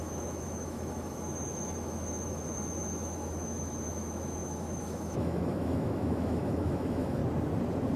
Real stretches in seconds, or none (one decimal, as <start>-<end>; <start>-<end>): 7.2-8.0